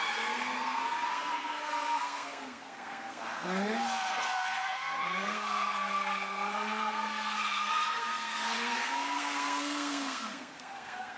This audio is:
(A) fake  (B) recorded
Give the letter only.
A